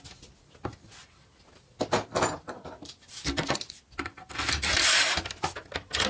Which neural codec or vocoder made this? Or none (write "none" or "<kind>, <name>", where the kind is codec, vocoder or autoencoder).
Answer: none